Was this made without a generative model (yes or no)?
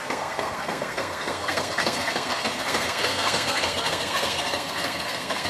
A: no